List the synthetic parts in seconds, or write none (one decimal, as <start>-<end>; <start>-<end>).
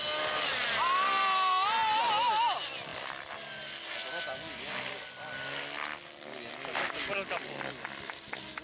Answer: none